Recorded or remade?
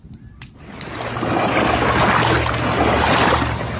recorded